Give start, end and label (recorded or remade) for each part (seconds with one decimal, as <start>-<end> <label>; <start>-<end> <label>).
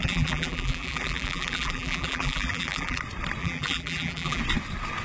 0.0-3.0 remade; 3.0-3.4 recorded; 3.4-4.4 remade; 4.4-5.0 recorded